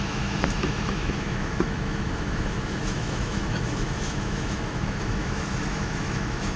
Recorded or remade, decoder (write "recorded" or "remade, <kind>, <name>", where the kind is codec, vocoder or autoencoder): remade, autoencoder, DAC-VAE